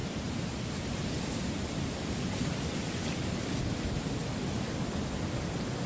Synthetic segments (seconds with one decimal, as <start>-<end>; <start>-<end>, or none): 0.0-2.3